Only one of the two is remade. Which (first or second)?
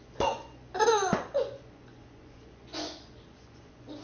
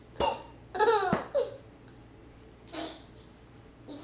first